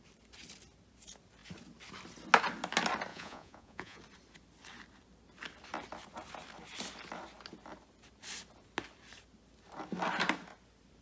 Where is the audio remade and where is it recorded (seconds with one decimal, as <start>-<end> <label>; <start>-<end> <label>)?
0.0-3.1 recorded; 3.1-4.0 remade; 4.0-11.0 recorded